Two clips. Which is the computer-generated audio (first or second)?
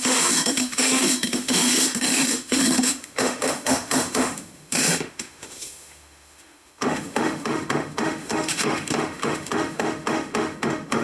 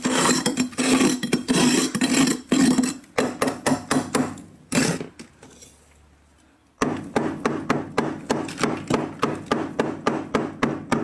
first